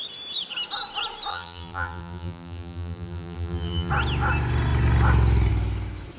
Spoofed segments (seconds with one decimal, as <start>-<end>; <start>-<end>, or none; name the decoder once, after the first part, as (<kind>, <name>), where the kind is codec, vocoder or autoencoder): 1.3-3.9 (vocoder, BigVGAN v2)

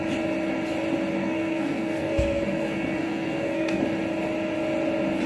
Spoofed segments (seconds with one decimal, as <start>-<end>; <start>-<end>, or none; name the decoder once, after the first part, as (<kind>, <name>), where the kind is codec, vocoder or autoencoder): 1.2-3.8 (codec, SNAC)

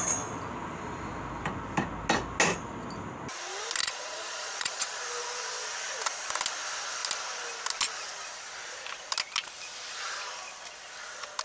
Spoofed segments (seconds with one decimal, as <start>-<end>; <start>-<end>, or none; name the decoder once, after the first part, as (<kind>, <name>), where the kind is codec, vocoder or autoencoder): 3.8-5.0 (vocoder, Vocos)